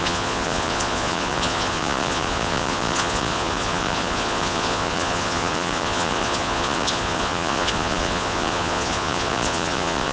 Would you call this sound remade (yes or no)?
yes